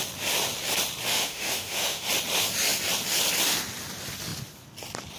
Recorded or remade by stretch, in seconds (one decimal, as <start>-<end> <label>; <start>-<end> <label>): 0.0-1.1 recorded; 1.1-2.1 remade; 2.1-5.2 recorded

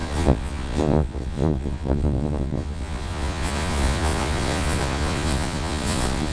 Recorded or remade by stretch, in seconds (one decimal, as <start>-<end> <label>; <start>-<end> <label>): 0.0-6.3 remade

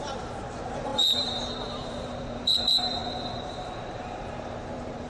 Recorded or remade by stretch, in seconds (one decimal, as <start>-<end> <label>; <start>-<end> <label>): 0.0-5.1 remade

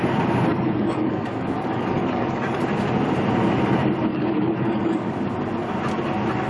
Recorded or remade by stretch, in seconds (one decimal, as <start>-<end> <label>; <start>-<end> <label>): 0.0-0.5 recorded; 0.5-2.6 remade; 2.6-4.1 recorded; 4.1-5.1 remade; 5.1-6.5 recorded

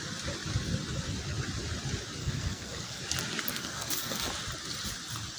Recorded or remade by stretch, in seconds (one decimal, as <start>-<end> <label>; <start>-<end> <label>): 0.0-2.2 recorded; 2.2-3.0 remade; 3.0-3.5 recorded; 3.5-4.3 remade; 4.3-5.4 recorded

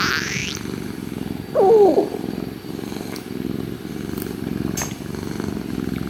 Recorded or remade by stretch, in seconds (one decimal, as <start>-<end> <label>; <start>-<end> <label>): 0.0-6.1 recorded